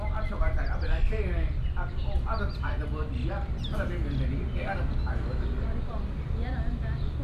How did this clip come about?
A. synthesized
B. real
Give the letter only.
B